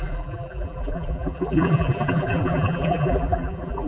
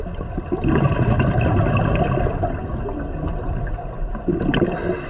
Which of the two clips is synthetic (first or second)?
first